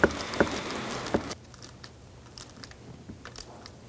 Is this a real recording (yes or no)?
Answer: yes